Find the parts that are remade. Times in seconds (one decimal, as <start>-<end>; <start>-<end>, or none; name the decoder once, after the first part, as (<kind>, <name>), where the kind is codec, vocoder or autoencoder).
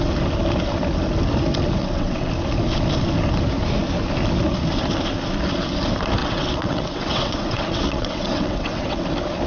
1.8-2.3 (vocoder, WaveNeXt); 6.2-9.0